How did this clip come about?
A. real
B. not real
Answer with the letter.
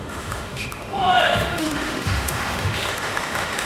B